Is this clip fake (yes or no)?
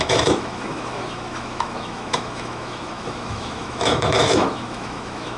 yes